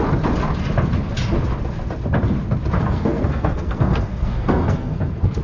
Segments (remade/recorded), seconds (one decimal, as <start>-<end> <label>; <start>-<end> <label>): 0.0-2.8 recorded; 2.8-5.4 remade